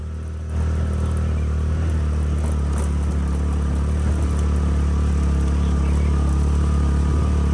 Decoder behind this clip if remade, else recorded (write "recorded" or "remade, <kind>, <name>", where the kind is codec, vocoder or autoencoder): recorded